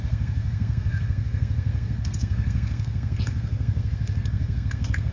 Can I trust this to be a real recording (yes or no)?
no